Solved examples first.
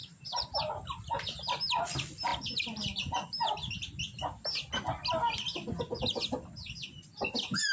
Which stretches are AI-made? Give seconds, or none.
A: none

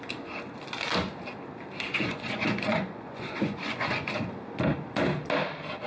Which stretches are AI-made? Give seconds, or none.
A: 1.9-4.1 (vocoder, Vocos)